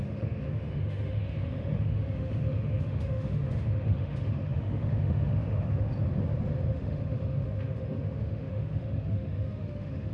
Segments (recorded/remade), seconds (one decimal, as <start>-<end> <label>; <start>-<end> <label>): 0.0-5.9 remade; 5.9-6.7 recorded; 6.7-10.1 remade

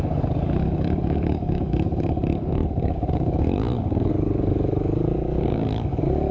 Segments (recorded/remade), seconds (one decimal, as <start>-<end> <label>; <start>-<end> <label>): 0.0-6.3 remade

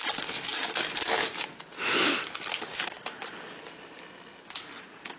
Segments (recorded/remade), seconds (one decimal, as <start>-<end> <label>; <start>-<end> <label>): 0.0-5.2 recorded

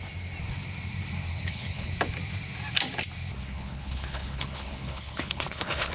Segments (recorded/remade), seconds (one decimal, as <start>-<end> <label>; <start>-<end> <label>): 0.0-1.3 recorded; 1.3-1.9 remade; 1.9-3.4 recorded; 3.4-5.9 remade